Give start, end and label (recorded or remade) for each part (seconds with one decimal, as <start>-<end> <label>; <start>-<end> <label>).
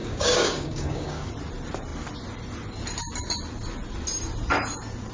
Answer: 0.0-1.3 remade; 1.3-5.1 recorded